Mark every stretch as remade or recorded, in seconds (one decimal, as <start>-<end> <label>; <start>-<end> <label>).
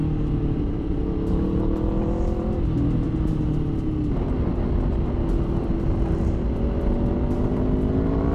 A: 0.0-8.3 recorded